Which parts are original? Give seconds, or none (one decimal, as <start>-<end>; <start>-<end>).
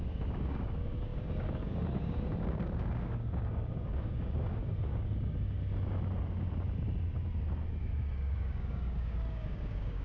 5.6-7.8